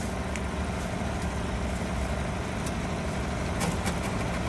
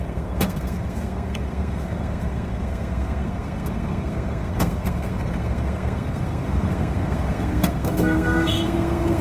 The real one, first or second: first